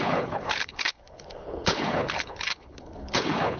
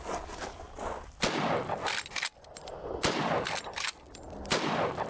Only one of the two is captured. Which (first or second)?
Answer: second